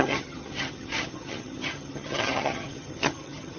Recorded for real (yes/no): no